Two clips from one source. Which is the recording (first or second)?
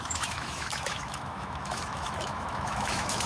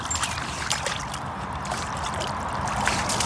second